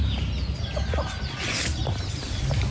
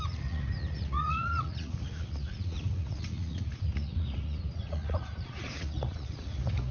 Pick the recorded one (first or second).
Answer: first